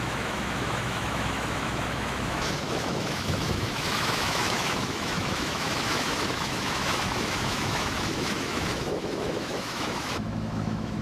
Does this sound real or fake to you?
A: fake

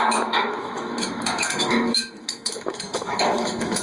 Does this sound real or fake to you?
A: fake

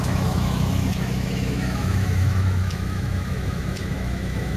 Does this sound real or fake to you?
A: fake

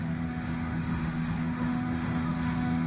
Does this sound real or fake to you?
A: fake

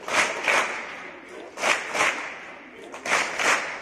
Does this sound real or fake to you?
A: real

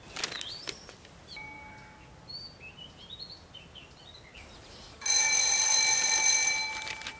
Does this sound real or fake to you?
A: real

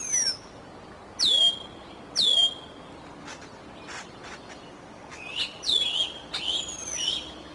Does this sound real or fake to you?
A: real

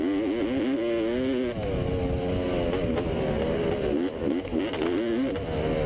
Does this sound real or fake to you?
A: real